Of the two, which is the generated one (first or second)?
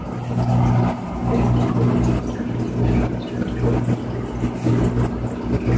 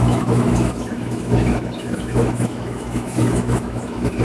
second